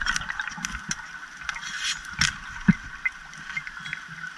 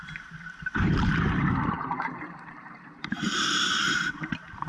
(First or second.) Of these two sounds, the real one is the first